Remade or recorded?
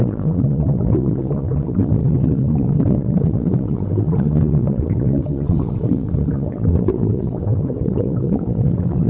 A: remade